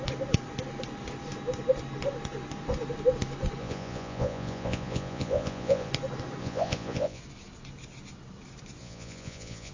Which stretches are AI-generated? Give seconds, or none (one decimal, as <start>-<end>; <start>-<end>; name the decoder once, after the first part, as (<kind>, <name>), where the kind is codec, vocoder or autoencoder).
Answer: 3.6-5.9 (vocoder, Vocos); 6.4-7.2; 8.8-9.7